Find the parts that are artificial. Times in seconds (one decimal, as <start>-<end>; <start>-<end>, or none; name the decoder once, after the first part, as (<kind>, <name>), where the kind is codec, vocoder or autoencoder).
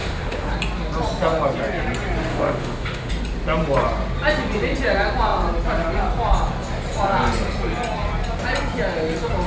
0.0-0.5 (autoencoder, DAC-VAE); 2.3-3.1